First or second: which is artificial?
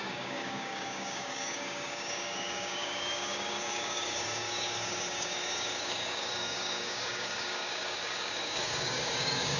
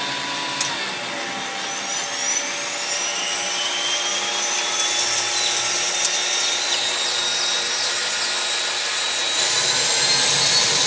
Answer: first